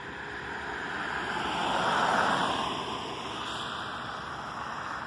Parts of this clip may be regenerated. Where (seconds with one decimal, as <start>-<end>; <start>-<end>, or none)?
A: 1.6-2.4